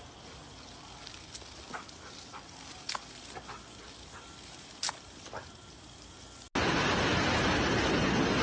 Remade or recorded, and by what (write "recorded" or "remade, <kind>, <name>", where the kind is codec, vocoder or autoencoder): recorded